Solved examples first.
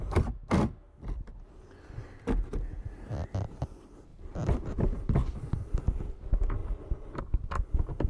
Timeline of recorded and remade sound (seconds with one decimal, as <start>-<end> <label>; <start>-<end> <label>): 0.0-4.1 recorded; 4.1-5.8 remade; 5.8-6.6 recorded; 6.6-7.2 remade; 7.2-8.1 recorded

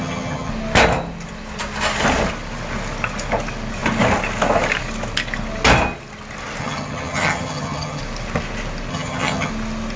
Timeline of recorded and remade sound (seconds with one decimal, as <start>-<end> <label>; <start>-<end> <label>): 0.0-0.5 remade; 0.5-6.6 recorded; 6.6-8.0 remade; 8.0-8.9 recorded; 8.9-9.5 remade; 9.5-10.0 recorded

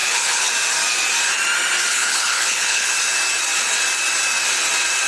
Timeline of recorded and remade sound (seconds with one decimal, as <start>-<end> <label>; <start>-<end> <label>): 0.0-0.5 remade; 0.5-1.9 recorded; 1.9-2.9 remade; 2.9-5.1 recorded